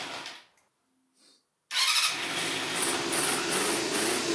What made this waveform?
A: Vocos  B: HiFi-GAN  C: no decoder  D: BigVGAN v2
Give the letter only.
C